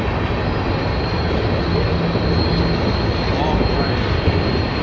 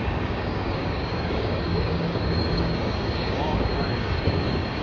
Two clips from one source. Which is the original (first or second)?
first